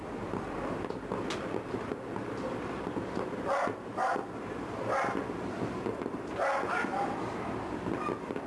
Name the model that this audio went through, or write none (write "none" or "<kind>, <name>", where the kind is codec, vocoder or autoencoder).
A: vocoder, BigVGAN v2